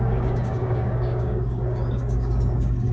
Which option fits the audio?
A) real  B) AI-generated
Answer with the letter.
B